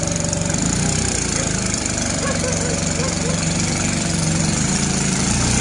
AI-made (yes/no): yes